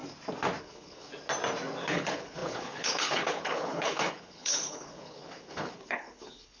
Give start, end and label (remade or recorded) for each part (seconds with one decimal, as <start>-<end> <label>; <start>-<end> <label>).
0.0-0.6 recorded; 0.6-1.1 remade; 1.1-1.8 recorded; 1.8-6.6 remade